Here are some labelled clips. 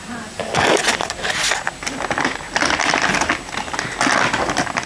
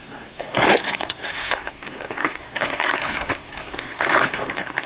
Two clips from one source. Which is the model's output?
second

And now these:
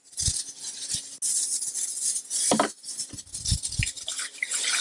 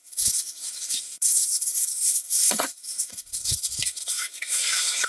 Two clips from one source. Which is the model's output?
second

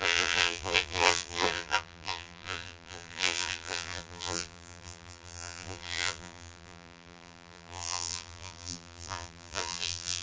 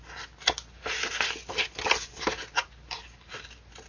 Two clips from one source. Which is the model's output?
first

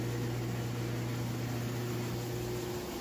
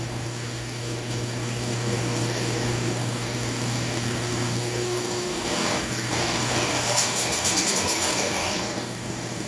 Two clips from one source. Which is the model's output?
second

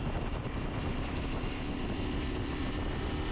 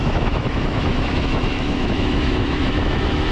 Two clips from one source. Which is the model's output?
second